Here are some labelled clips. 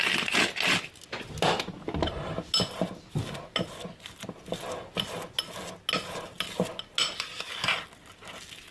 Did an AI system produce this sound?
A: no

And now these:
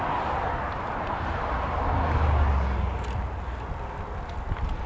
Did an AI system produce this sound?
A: no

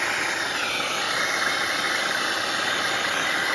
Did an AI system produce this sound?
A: no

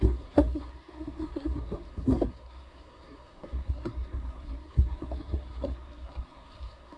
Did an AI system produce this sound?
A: yes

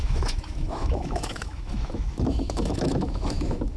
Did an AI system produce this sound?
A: yes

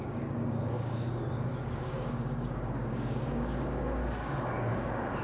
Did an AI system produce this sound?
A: yes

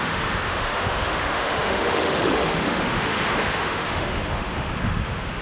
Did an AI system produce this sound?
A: yes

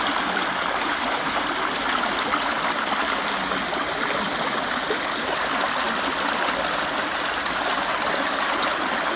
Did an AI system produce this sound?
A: no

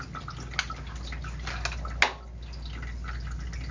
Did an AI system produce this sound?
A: no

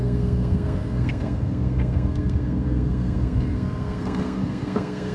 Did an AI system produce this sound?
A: yes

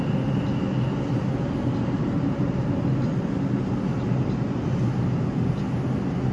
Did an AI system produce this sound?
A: no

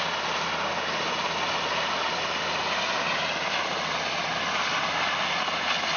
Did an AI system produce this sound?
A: no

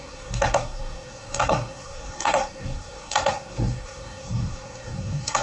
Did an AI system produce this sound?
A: yes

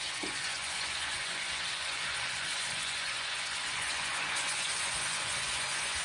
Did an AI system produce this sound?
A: yes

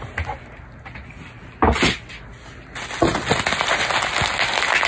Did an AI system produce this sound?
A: no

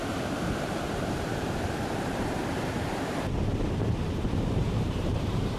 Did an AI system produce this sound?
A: yes